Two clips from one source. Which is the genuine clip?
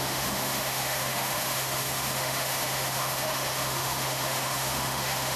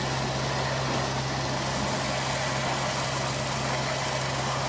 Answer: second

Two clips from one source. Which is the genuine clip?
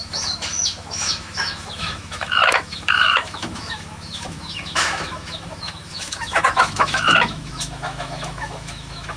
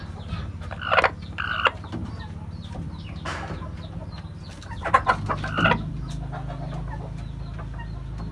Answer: second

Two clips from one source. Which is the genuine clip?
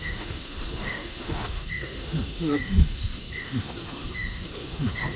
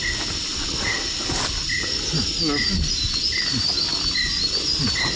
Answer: second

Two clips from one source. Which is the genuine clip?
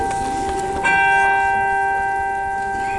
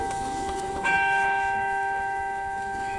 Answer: first